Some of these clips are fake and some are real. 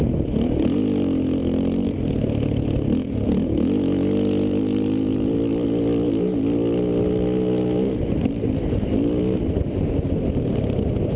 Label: real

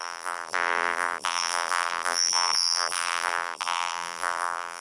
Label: fake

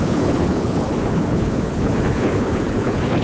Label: fake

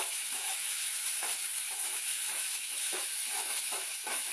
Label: fake